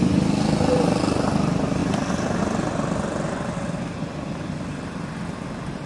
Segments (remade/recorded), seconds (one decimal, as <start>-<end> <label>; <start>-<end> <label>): 0.0-5.9 recorded